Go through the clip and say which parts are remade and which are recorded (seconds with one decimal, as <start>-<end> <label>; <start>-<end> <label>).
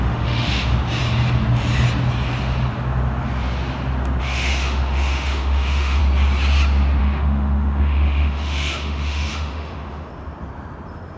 0.0-0.7 remade; 0.7-4.2 recorded; 4.2-6.0 remade; 6.0-7.0 recorded; 7.0-10.1 remade; 10.1-11.2 recorded